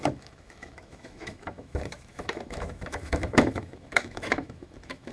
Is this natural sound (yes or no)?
no